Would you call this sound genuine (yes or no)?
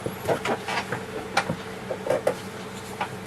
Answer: yes